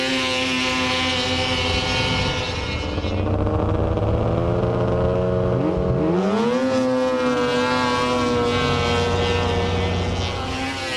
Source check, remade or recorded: recorded